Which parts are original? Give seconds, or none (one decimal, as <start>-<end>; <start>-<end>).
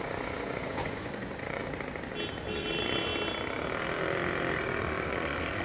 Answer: 1.6-2.5; 3.1-4.6